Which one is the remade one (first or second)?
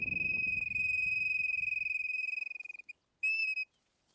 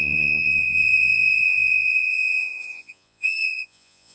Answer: second